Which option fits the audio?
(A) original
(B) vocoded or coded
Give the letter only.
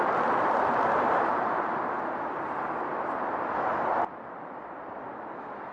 B